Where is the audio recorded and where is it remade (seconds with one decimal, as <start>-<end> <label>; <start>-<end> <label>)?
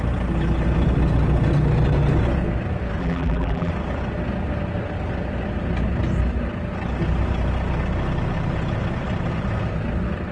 0.0-3.0 recorded; 3.0-3.7 remade; 3.7-10.3 recorded